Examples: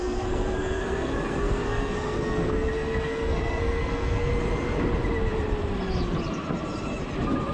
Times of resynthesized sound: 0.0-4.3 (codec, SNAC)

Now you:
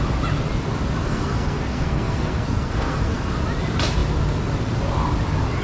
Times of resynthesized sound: 1.0-3.3 (codec, SNAC)

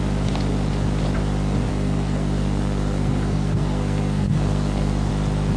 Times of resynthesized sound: 1.7-5.1 (codec, SNAC)

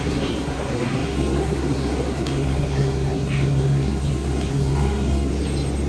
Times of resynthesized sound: 0.0-5.3 (codec, SNAC)

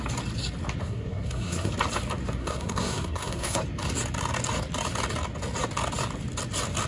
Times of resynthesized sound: 0.8-1.7 (codec, SNAC); 2.4-3.6

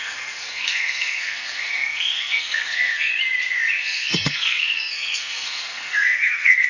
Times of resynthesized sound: 0.0-3.1 (codec, SNAC); 3.7-6.7